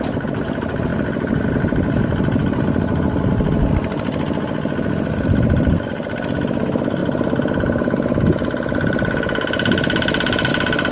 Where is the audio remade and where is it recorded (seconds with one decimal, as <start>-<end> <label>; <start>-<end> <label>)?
0.0-10.9 recorded